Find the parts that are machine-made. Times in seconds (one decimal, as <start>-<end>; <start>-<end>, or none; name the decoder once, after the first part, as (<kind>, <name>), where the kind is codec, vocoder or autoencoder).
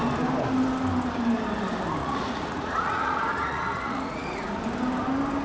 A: 2.0-4.6 (vocoder, Vocos)